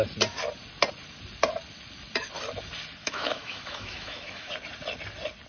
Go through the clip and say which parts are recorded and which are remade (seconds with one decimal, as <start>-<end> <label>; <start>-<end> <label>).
0.0-3.0 recorded; 3.0-4.5 remade; 4.5-5.5 recorded